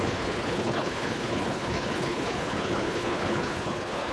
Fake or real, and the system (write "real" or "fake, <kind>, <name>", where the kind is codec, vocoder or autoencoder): fake, codec, HILCodec